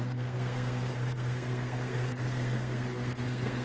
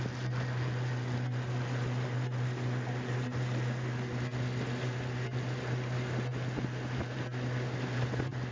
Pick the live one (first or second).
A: second